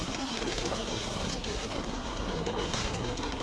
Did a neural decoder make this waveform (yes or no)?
yes